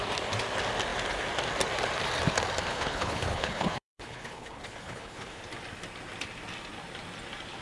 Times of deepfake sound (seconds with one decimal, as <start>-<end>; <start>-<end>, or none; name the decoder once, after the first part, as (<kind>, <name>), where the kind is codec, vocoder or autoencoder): 2.7-5.4 (codec, HILCodec)

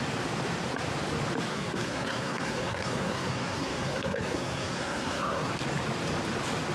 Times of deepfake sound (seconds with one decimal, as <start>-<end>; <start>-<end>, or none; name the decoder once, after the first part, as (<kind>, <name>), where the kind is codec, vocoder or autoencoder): 1.5-5.5 (codec, SNAC)

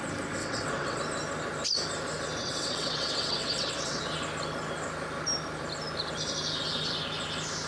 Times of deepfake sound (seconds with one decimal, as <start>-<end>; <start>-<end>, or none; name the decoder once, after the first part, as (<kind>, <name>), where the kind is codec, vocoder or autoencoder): 0.4-1.0 (vocoder, WaveNeXt); 2.4-4.0

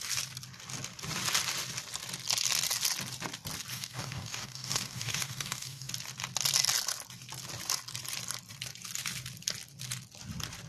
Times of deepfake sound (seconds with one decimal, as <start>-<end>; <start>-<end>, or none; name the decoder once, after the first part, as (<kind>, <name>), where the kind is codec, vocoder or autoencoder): 3.7-5.9 (codec, DAC)

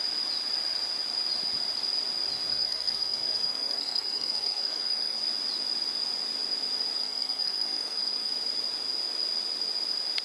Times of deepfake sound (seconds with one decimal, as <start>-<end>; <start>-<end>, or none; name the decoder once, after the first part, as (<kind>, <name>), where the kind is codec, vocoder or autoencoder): 2.5-5.2 (codec, SNAC); 7.0-8.3

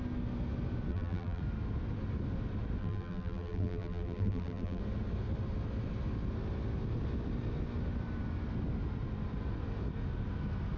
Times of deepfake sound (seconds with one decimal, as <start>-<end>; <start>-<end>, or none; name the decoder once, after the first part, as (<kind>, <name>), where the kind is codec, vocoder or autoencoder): 0.9-1.4 (vocoder, BigVGAN v2); 2.8-4.8

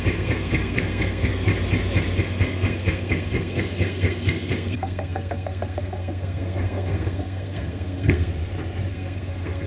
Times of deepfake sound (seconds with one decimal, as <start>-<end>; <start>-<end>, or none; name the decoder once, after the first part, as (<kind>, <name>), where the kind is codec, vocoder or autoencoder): 0.0-1.5 (codec, SNAC); 2.2-8.3; 8.9-9.7